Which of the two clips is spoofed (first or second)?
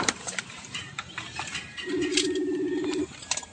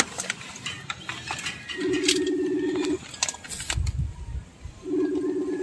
first